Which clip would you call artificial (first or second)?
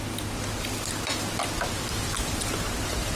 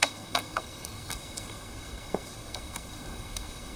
second